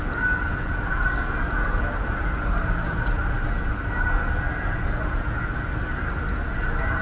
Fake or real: real